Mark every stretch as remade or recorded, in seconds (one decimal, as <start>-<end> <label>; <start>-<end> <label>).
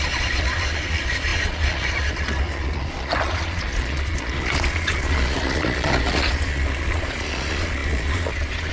0.0-8.7 remade